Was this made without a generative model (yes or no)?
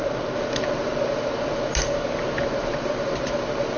yes